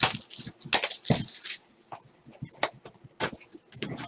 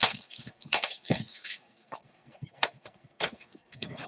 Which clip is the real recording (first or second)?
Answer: first